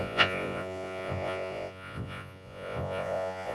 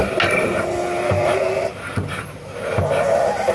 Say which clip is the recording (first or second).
second